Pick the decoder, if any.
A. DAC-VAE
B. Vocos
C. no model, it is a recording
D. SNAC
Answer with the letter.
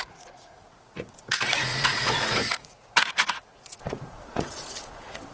B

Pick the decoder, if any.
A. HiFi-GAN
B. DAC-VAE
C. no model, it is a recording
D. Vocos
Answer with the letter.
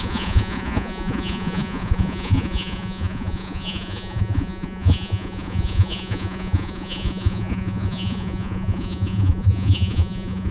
D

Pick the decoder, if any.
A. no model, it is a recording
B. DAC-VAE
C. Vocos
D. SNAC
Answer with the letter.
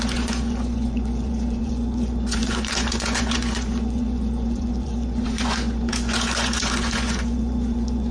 C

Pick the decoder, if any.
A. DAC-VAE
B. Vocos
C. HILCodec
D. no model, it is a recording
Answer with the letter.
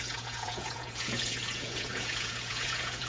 B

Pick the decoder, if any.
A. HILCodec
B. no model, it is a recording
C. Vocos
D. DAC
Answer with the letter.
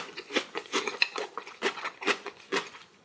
C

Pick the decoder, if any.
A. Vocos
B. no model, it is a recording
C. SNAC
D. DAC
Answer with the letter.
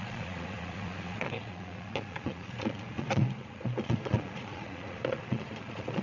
A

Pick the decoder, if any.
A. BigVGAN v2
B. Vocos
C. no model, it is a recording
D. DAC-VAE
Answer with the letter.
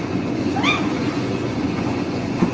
B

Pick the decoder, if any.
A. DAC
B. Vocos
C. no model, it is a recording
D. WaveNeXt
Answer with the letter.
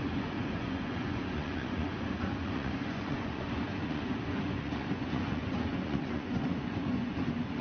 B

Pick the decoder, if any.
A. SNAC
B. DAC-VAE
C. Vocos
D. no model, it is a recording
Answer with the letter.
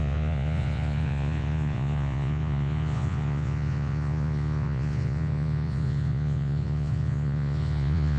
C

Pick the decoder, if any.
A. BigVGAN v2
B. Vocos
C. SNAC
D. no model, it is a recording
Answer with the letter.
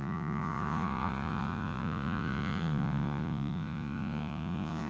B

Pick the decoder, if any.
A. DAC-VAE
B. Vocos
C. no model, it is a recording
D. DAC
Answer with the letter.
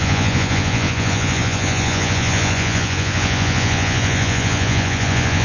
B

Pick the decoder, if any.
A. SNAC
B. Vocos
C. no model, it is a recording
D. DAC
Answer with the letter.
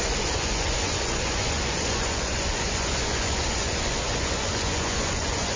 B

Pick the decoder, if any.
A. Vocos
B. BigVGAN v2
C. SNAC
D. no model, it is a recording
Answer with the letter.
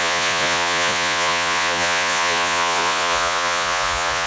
A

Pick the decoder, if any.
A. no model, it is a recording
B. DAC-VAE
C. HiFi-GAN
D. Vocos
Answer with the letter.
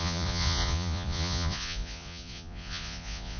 D